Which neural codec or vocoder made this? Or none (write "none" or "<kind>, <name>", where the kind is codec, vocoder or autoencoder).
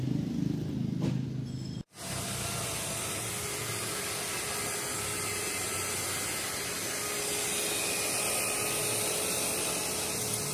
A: none